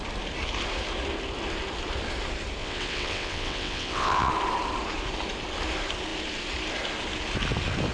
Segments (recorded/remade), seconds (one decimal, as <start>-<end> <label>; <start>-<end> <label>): 0.0-2.6 recorded; 2.6-4.3 remade; 4.3-7.9 recorded